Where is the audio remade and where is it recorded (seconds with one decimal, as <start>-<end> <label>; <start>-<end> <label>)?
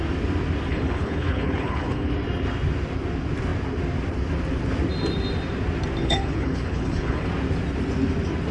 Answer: 0.0-0.7 recorded; 0.7-2.1 remade; 2.1-6.0 recorded; 6.0-7.3 remade; 7.3-8.5 recorded